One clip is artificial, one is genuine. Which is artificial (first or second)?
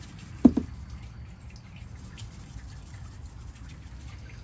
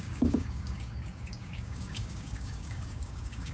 second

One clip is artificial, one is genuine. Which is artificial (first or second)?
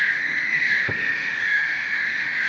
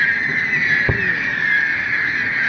first